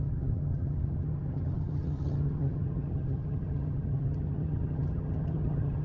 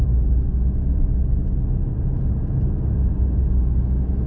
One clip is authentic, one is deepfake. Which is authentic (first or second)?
second